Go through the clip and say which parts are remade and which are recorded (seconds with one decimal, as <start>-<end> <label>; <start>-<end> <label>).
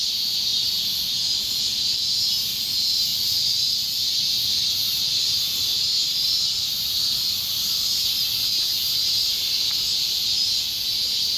0.0-3.1 recorded; 3.1-4.5 remade; 4.5-5.1 recorded; 5.1-10.2 remade; 10.2-11.4 recorded